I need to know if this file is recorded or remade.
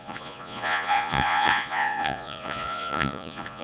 remade